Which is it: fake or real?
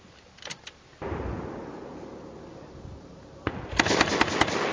real